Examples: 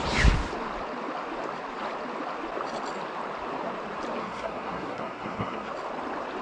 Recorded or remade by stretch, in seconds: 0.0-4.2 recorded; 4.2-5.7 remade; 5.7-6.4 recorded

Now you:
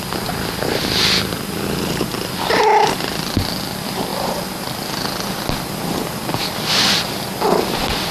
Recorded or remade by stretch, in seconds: 0.0-8.1 recorded